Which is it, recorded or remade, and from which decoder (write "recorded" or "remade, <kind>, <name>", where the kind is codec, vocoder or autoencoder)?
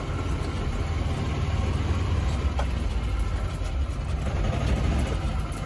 recorded